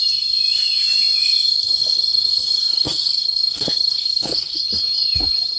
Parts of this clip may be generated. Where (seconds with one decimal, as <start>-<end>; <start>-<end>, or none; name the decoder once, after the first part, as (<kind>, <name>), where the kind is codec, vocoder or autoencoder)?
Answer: 1.2-4.6 (codec, SNAC)